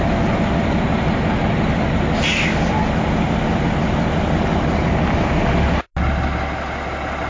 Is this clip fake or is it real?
real